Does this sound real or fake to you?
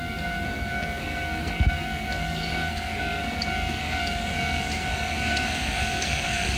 fake